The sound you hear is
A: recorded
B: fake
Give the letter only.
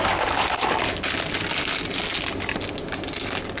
A